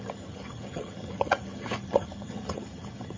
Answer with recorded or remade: remade